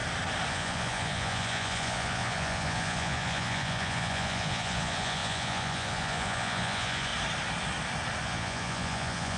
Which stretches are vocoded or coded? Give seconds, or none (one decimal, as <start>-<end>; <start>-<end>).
0.5-7.1; 8.2-9.4